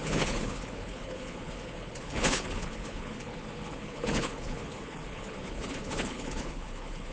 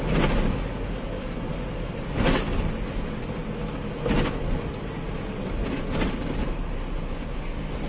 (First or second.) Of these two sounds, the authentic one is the second